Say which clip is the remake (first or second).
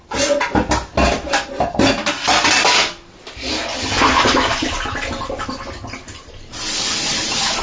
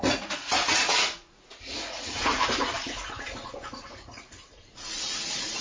second